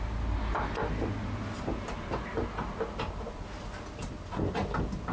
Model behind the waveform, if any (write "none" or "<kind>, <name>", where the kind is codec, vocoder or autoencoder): none